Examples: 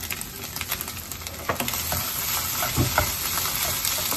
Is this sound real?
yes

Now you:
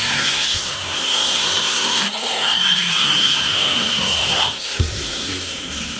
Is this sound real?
no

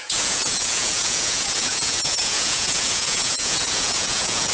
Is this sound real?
no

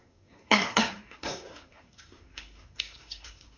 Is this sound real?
no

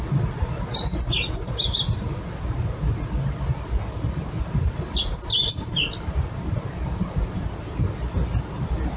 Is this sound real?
yes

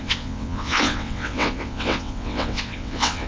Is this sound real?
no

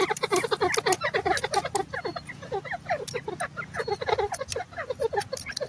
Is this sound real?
yes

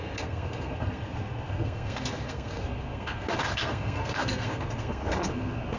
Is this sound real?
no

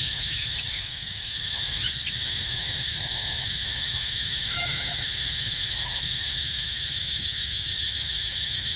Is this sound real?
no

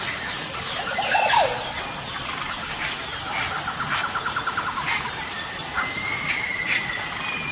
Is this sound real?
yes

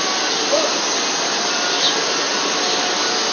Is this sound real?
yes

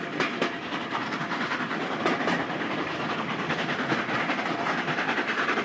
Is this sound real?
yes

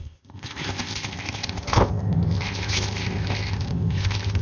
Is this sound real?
no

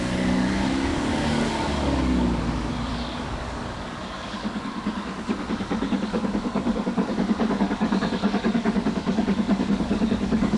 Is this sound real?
no